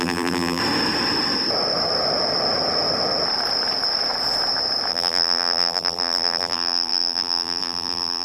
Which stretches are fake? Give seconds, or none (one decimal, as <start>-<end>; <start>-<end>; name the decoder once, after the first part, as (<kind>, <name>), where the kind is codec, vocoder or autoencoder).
0.0-0.6 (vocoder, BigVGAN v2); 4.9-8.2